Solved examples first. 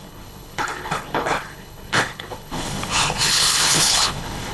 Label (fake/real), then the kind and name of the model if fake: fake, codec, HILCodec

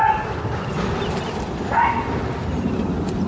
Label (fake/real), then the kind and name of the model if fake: real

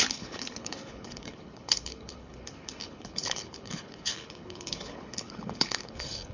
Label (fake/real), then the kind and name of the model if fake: fake, codec, HILCodec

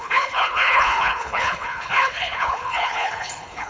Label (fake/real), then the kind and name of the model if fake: fake, codec, HILCodec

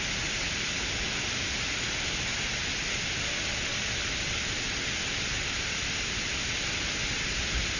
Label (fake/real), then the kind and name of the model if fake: real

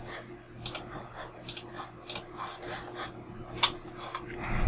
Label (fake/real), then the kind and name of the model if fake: real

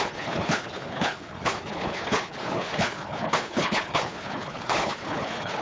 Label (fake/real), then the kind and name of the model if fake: fake, codec, HILCodec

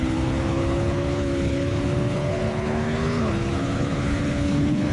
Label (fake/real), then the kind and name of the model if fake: fake, codec, HILCodec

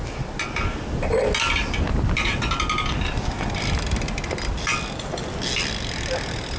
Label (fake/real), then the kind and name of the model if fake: real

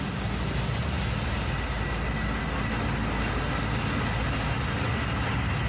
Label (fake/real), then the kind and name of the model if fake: real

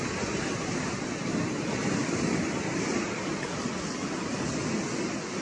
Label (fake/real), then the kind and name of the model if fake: real